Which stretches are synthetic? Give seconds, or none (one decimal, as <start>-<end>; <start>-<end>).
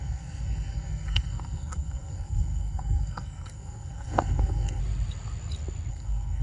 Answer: 0.0-4.8; 5.9-6.4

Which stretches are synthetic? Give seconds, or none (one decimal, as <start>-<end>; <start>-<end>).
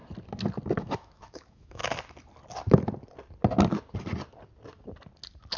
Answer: 0.8-1.8